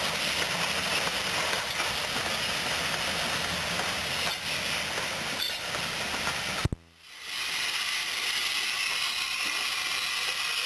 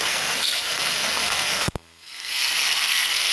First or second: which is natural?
first